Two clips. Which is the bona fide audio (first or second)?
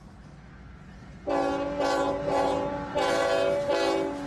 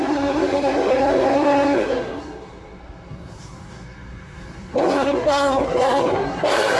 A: first